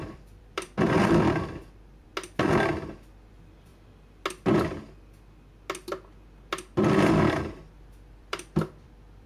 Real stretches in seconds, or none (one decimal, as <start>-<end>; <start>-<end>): 2.1-3.3; 3.7-7.5